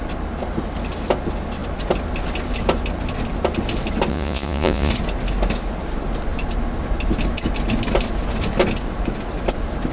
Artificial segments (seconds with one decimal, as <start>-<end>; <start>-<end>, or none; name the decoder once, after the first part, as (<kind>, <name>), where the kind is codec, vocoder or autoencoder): 4.1-4.9 (vocoder, Vocos)